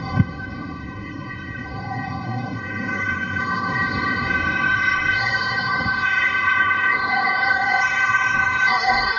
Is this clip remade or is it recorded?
remade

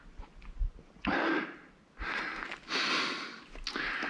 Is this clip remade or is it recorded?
recorded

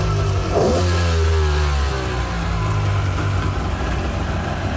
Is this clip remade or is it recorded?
recorded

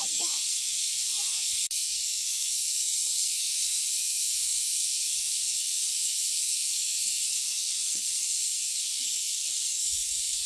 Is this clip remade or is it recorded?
remade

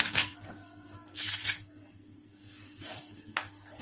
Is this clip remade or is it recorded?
remade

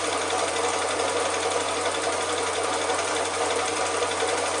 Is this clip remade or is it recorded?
recorded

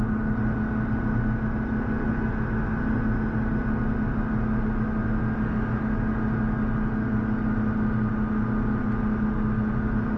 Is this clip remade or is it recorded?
recorded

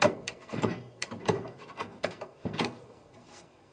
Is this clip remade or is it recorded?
remade